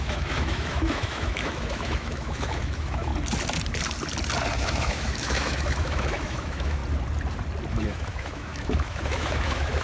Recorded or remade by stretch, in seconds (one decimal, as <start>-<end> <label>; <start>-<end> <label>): 0.0-3.1 remade; 3.1-4.5 recorded; 4.5-6.8 remade; 6.8-7.7 recorded; 7.7-9.8 remade